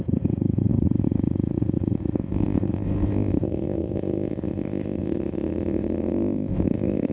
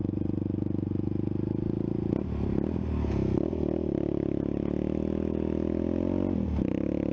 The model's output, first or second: first